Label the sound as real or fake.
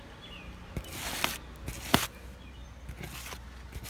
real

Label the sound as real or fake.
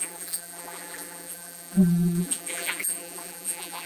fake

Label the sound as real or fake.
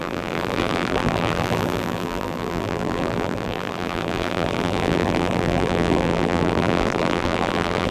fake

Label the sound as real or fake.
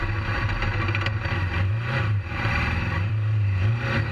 fake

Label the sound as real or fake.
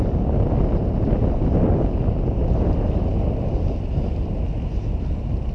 real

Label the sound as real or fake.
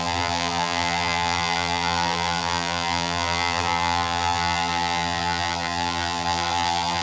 fake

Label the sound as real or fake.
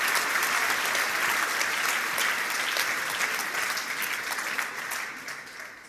real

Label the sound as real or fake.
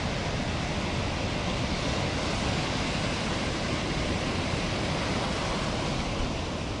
real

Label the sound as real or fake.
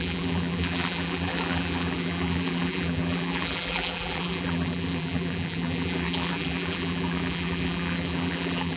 fake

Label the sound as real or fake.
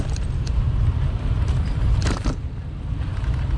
fake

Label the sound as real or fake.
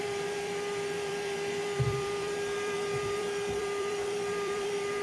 fake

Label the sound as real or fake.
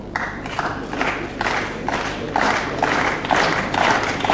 fake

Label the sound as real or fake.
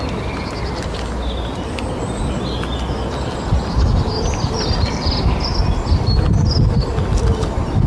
real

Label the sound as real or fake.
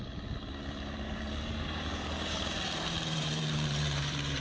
fake